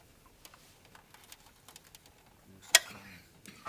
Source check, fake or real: real